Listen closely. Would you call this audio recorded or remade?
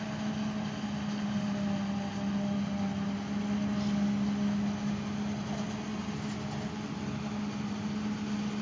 recorded